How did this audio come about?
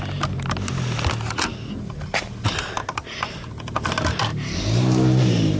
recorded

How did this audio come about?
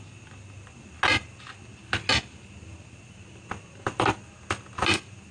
recorded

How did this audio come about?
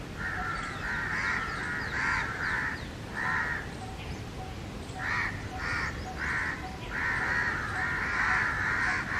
recorded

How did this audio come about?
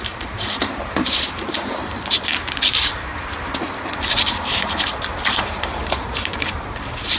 remade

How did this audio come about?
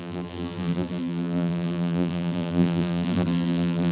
remade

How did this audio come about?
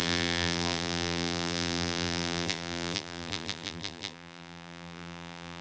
remade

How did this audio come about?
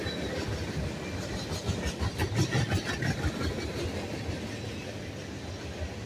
recorded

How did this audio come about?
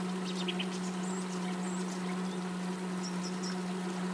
recorded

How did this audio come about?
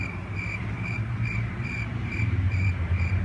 remade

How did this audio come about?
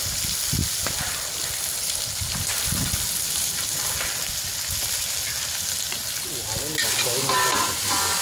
recorded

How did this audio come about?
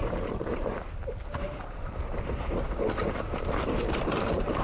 remade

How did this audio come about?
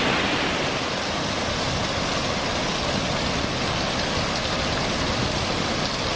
recorded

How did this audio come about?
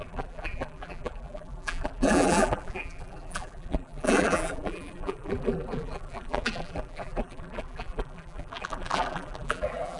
remade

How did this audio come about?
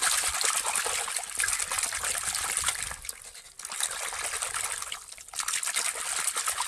recorded